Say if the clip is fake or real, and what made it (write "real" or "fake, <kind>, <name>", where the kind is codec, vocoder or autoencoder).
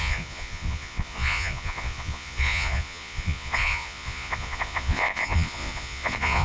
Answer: fake, vocoder, Vocos